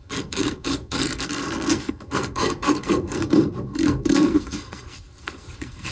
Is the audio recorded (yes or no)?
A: no